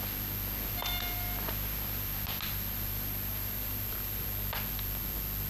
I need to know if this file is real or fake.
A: real